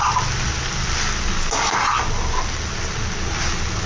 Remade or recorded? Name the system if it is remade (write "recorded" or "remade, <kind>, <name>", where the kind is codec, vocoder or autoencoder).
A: recorded